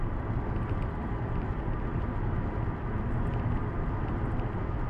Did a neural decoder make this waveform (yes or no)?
no